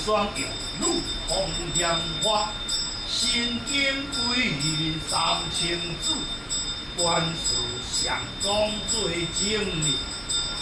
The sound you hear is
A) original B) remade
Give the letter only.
A